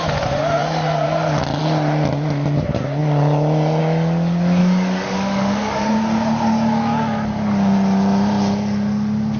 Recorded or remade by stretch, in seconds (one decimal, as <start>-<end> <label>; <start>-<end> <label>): 0.0-4.6 recorded; 4.6-5.9 remade; 5.9-9.4 recorded

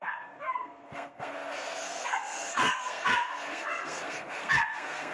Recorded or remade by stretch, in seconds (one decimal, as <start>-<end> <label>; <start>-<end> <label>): 0.0-5.1 remade